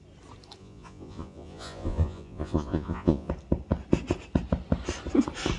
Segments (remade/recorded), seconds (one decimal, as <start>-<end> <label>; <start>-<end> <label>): 0.0-0.6 recorded; 0.6-3.3 remade; 3.3-5.6 recorded